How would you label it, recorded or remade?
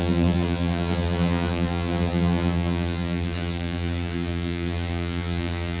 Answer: remade